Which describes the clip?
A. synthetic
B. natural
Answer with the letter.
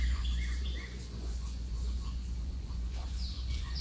A